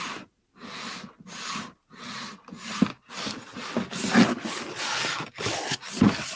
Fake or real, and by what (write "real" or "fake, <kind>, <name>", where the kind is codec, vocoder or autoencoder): real